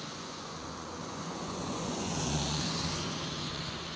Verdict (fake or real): fake